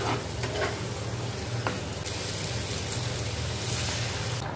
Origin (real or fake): real